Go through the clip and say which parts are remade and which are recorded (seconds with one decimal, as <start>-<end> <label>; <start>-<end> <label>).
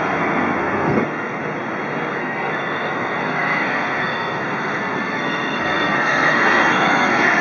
0.0-1.4 remade; 1.4-2.2 recorded; 2.2-7.4 remade